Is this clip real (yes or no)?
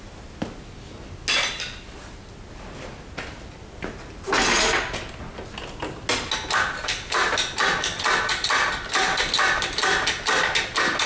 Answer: yes